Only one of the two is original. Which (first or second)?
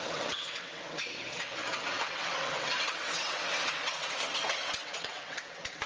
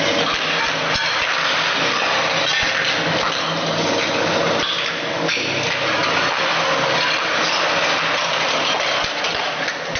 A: second